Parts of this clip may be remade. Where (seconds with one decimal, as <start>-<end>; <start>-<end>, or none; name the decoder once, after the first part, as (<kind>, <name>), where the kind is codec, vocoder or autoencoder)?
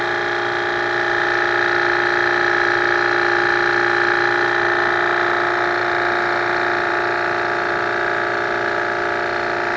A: none